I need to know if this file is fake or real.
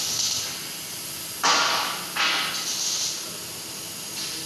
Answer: real